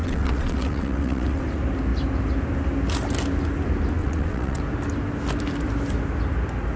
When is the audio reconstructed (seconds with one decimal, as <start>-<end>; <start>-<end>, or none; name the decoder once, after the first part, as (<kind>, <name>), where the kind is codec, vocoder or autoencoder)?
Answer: 0.0-1.4 (vocoder, WaveNeXt); 4.0-4.6